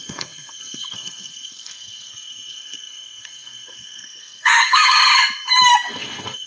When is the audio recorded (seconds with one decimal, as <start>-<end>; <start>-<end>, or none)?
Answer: 5.1-5.7